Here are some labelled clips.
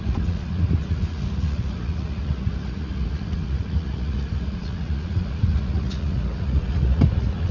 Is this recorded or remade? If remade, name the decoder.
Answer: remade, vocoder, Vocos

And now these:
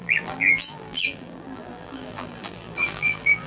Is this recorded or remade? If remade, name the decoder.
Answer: remade, vocoder, BigVGAN v2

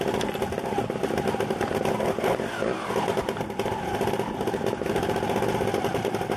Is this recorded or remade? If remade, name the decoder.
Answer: recorded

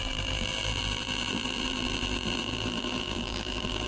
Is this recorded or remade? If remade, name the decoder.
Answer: remade, vocoder, BigVGAN v2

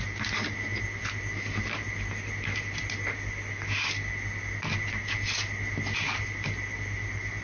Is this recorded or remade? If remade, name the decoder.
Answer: recorded